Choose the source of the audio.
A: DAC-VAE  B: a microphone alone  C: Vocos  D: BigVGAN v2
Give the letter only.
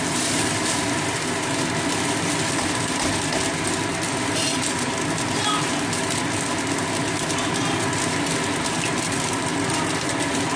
B